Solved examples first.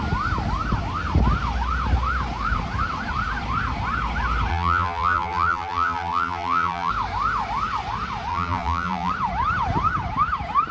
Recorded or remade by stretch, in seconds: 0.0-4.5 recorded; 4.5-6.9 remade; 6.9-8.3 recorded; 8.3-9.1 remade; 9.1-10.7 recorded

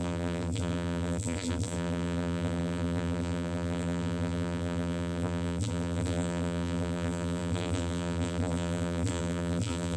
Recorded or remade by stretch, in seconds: 0.0-10.0 remade

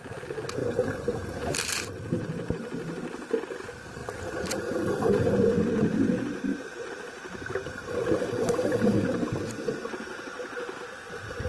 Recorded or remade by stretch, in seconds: 0.0-0.6 recorded; 0.6-1.3 remade; 1.3-6.5 recorded; 6.5-9.9 remade; 9.9-11.5 recorded

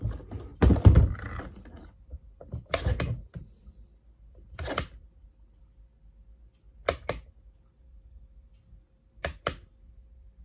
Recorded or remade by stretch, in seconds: 0.0-10.4 recorded

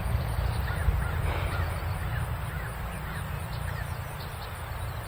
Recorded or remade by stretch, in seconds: 0.0-0.8 remade; 0.8-1.3 recorded; 1.3-2.0 remade; 2.0-5.1 recorded

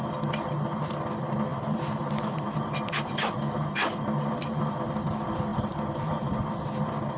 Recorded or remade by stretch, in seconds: 0.0-1.5 recorded; 1.5-4.7 remade; 4.7-5.5 recorded; 5.5-6.5 remade; 6.5-7.2 recorded

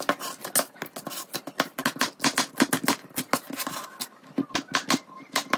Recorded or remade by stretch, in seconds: 0.0-5.6 recorded

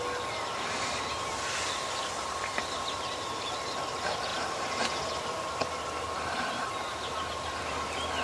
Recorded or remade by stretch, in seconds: 0.0-8.2 remade